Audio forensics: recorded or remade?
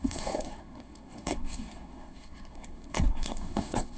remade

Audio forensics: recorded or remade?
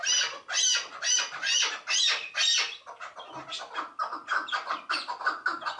recorded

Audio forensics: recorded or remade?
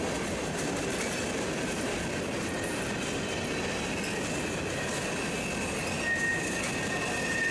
recorded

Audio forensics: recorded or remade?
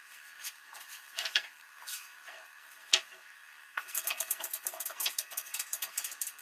remade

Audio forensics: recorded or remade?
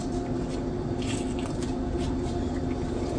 recorded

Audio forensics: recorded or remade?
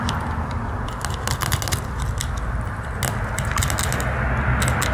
recorded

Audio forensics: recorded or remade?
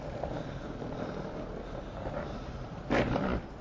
recorded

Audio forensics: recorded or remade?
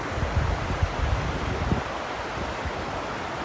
recorded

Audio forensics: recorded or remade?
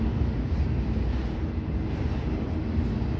recorded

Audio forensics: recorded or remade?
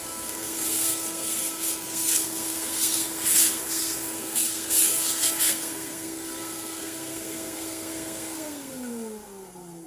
remade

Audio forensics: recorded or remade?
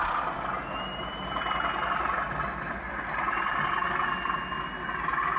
recorded